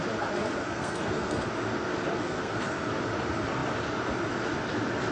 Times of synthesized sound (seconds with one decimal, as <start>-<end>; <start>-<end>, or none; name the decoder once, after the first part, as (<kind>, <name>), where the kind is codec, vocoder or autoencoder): 0.6-1.5 (codec, SNAC); 2.1-2.8